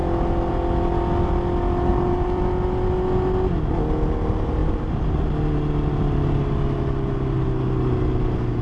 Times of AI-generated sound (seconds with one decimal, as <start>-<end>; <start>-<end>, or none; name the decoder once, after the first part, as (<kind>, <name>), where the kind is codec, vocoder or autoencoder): 1.9-2.4 (vocoder, BigVGAN v2); 4.6-5.1

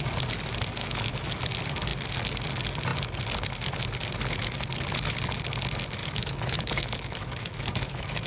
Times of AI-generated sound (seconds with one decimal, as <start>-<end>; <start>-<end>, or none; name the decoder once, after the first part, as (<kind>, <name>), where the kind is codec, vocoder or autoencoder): 0.8-1.4 (autoencoder, DAC-VAE); 6.0-8.3